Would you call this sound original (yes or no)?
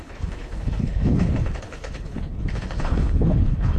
no